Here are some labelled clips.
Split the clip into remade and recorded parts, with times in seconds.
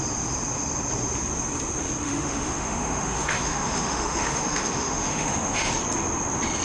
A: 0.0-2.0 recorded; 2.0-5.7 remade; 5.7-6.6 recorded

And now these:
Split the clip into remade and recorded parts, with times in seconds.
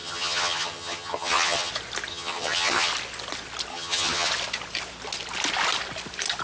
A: 0.0-1.7 remade; 1.7-2.1 recorded; 2.1-2.9 remade; 2.9-3.7 recorded; 3.7-4.3 remade; 4.3-6.4 recorded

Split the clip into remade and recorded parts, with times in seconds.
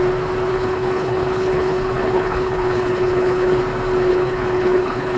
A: 0.0-0.5 recorded; 0.5-3.6 remade; 3.6-4.1 recorded; 4.1-5.2 remade